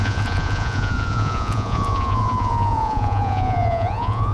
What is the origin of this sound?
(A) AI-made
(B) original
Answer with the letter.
A